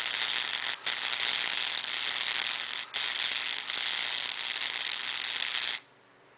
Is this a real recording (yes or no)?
yes